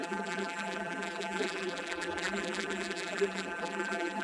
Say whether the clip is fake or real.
fake